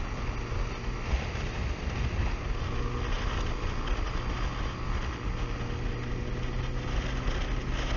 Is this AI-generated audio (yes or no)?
no